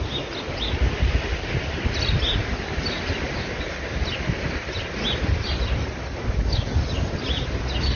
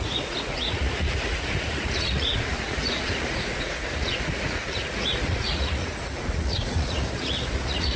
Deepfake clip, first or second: second